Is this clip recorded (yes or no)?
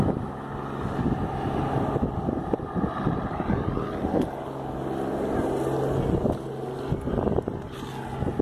yes